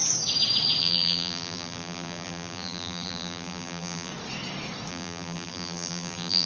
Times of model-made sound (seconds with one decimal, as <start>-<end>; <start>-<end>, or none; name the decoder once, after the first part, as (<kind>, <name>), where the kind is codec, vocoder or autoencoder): 0.8-4.1 (vocoder, BigVGAN v2); 4.9-6.5

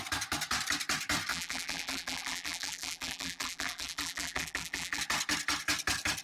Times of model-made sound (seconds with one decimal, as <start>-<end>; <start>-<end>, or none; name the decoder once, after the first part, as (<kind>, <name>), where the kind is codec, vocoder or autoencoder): 1.3-5.0 (vocoder, BigVGAN v2)

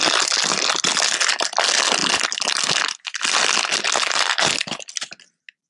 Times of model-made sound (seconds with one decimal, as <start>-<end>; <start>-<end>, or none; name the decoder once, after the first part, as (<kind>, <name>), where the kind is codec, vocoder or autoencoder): none

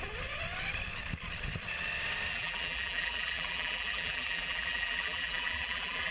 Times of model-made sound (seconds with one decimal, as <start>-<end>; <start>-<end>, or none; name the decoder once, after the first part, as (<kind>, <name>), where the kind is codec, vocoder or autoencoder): 2.3-6.1 (vocoder, BigVGAN v2)

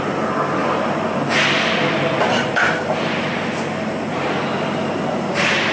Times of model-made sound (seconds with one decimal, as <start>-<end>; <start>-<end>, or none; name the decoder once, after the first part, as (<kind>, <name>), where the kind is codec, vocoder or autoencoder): 0.0-5.7 (vocoder, BigVGAN v2)

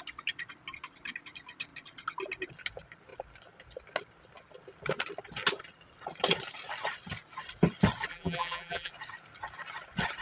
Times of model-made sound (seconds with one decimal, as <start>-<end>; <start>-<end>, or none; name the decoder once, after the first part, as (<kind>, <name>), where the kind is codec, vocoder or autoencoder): 8.1-8.9 (vocoder, BigVGAN v2)

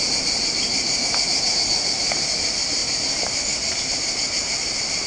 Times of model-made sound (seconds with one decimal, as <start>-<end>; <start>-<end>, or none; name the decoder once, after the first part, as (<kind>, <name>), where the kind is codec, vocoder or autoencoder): 0.0-5.1 (vocoder, BigVGAN v2)